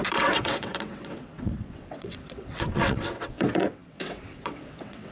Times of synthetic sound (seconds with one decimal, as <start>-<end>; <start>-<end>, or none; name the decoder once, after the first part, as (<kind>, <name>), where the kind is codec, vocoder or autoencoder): 0.0-5.1 (vocoder, WaveNeXt)